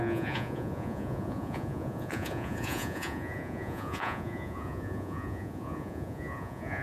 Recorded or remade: remade